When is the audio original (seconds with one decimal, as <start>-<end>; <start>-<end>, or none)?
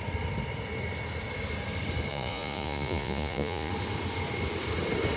0.0-2.1; 3.7-5.2